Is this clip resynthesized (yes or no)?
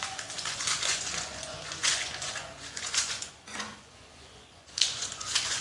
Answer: yes